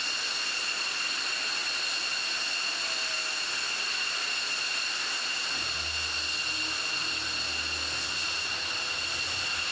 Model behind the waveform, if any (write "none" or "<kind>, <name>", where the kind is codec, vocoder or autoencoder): none